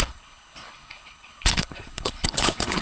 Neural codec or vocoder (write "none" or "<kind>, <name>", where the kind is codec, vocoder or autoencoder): codec, HILCodec